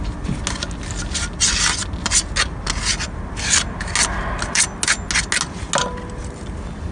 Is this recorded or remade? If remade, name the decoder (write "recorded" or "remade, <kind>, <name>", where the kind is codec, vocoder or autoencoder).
recorded